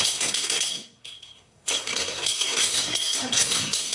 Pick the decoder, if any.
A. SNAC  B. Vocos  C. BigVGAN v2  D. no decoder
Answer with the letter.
A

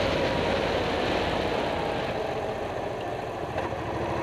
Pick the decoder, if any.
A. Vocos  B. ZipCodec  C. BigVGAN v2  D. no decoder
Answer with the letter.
D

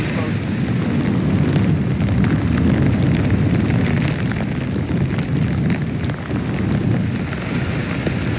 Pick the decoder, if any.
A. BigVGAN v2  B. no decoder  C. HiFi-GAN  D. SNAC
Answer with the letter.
B